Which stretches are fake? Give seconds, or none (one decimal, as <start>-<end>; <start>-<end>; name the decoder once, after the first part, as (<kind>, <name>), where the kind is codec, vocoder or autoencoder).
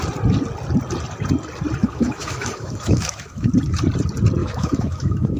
1.8-3.5 (autoencoder, DAC-VAE); 4.4-5.4